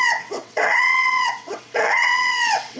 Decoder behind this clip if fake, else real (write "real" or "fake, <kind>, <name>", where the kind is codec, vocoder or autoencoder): fake, vocoder, WaveNeXt